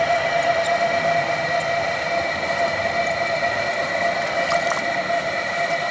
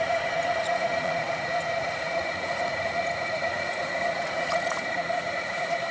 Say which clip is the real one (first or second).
first